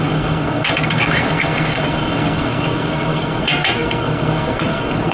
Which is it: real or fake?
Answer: fake